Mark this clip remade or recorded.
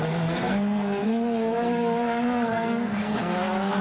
remade